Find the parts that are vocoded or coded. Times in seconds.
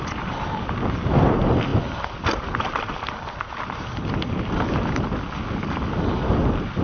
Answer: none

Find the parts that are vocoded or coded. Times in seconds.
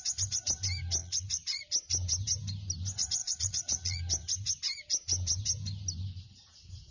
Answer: 1.0-1.6 (vocoder, Vocos); 3.2-4.0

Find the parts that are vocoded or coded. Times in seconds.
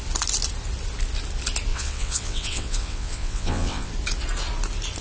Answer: 1.7-3.9 (vocoder, WaveNeXt)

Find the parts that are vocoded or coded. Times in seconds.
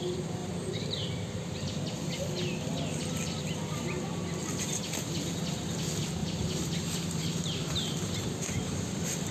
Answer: 0.4-1.8 (vocoder, BigVGAN v2); 6.2-9.3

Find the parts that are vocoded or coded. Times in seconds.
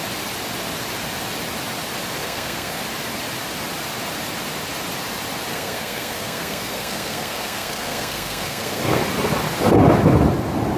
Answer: 2.2-2.8 (codec, SNAC); 5.5-9.0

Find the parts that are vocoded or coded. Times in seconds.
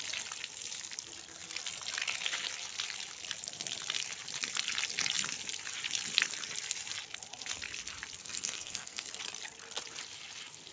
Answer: 8.2-9.1 (codec, SNAC)